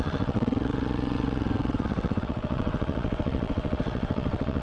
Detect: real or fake fake